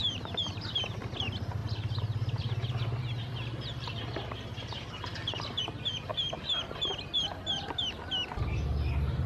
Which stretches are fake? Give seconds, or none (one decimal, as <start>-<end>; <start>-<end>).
0.0-1.0; 1.6-5.6